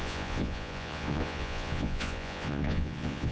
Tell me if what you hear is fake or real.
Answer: fake